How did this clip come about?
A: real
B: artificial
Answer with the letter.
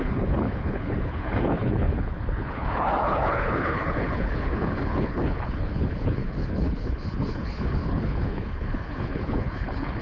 B